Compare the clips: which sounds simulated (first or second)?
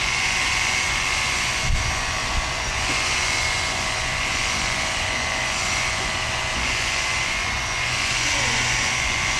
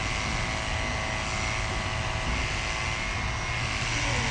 first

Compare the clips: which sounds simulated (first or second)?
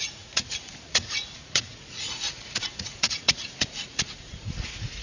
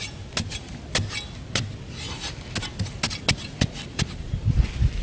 first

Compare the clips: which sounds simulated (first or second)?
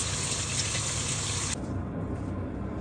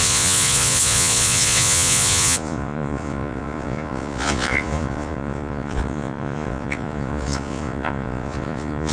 second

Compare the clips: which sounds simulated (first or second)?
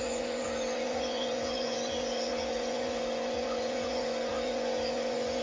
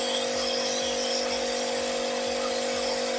first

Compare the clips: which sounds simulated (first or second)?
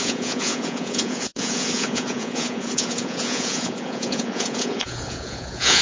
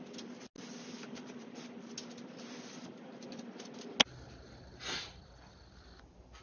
first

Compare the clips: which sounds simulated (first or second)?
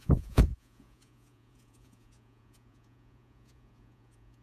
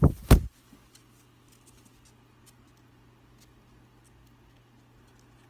first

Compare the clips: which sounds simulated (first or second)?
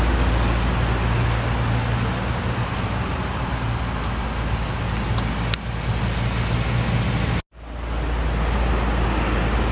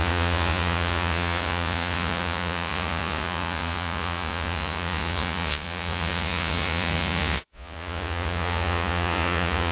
second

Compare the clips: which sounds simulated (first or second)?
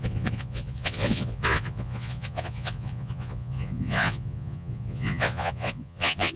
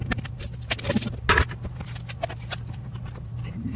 first